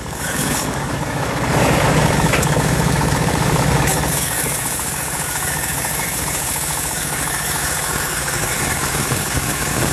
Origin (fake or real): fake